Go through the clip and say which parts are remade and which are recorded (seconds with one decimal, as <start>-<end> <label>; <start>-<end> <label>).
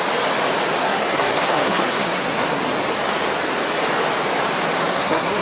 0.0-0.8 recorded; 0.8-2.6 remade; 2.6-4.9 recorded; 4.9-5.4 remade